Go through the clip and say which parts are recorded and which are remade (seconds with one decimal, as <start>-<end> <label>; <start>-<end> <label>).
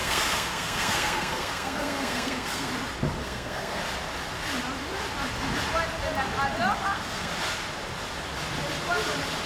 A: 0.0-2.7 remade; 2.7-3.2 recorded; 3.2-3.8 remade; 3.8-6.8 recorded; 6.8-7.3 remade; 7.3-9.5 recorded